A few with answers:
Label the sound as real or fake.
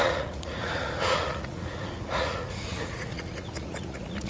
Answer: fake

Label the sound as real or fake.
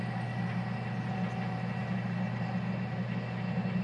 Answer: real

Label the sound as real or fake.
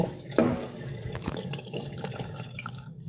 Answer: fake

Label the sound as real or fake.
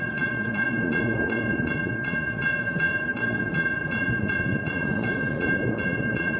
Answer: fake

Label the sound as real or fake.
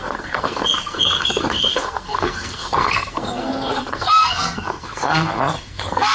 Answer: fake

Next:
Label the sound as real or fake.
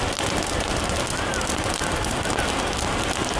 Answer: real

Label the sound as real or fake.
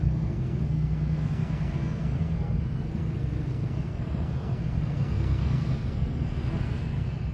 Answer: fake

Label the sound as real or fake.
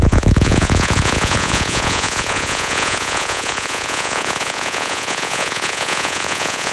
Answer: fake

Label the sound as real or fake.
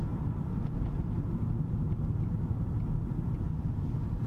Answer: real